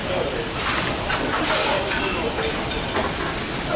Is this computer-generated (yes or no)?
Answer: no